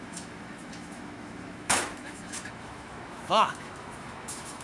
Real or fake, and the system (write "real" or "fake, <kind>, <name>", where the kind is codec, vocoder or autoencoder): fake, autoencoder, DAC-VAE